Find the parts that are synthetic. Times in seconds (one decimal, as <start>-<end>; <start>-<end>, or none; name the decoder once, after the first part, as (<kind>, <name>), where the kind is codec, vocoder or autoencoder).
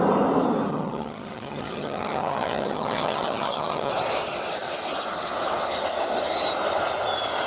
0.7-3.9 (vocoder, HiFi-GAN)